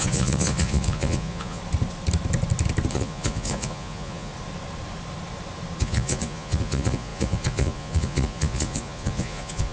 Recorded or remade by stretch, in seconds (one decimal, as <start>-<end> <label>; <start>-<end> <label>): 0.0-1.6 remade; 1.6-2.9 recorded; 2.9-4.3 remade; 4.3-5.8 recorded; 5.8-9.7 remade